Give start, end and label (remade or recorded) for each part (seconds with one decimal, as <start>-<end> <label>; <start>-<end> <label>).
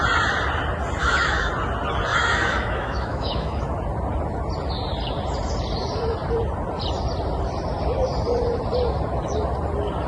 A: 0.0-1.0 recorded; 1.0-1.5 remade; 1.5-2.1 recorded; 2.1-3.6 remade; 3.6-10.1 recorded